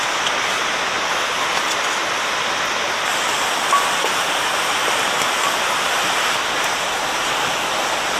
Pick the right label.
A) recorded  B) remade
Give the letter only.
A